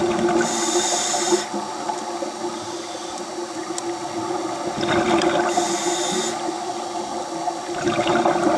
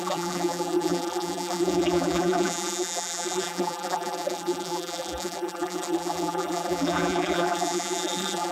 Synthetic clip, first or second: second